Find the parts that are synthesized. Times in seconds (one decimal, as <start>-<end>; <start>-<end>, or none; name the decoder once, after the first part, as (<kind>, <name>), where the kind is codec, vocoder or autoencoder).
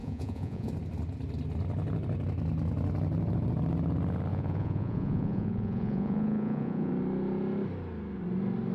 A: 0.0-0.7 (vocoder, Vocos); 4.3-6.9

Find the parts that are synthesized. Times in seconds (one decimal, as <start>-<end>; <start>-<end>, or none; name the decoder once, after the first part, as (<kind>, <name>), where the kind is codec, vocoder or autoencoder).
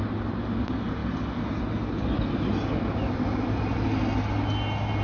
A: none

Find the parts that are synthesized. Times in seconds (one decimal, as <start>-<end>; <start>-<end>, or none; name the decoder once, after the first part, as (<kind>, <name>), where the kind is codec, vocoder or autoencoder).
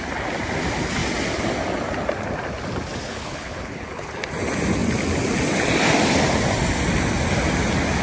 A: 3.1-4.1 (codec, HILCodec)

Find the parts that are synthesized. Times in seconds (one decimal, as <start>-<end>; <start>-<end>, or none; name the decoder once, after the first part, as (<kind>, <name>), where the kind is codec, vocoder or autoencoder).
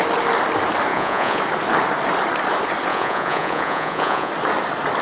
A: 0.9-1.4 (vocoder, Vocos); 2.9-4.3